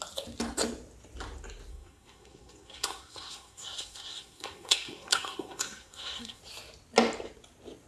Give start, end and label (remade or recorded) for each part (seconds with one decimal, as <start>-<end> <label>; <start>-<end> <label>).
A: 0.0-1.7 recorded; 1.7-6.4 remade; 6.4-7.9 recorded